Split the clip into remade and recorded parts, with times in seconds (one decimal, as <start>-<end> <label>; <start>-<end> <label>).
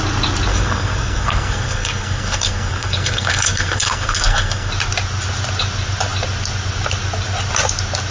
0.0-0.5 recorded; 0.5-4.7 remade; 4.7-8.1 recorded